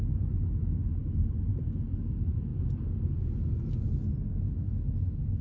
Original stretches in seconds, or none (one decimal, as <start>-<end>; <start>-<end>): 0.0-4.3; 4.9-5.4